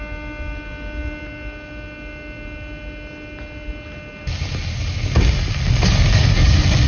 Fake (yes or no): no